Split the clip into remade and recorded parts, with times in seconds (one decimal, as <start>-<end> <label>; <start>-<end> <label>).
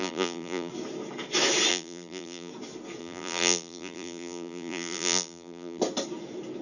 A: 0.0-0.7 remade; 0.7-1.7 recorded; 1.7-2.5 remade; 2.5-3.0 recorded; 3.0-5.8 remade; 5.8-6.6 recorded